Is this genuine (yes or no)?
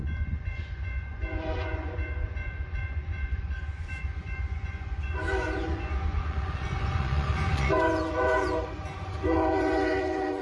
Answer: no